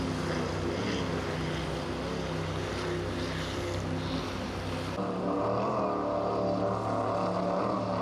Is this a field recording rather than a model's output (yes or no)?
yes